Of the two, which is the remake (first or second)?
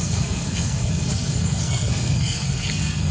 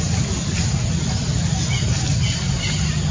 first